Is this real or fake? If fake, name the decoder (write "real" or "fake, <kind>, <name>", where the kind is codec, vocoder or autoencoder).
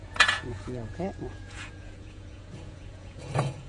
fake, vocoder, Vocos